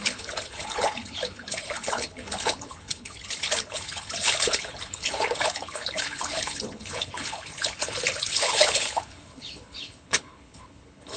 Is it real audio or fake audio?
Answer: fake